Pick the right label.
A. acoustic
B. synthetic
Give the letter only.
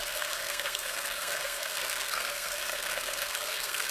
B